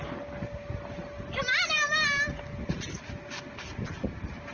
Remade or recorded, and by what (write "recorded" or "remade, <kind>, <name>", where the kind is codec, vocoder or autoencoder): recorded